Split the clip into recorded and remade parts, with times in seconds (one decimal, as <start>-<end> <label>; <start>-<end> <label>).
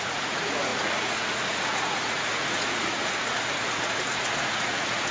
0.0-5.1 remade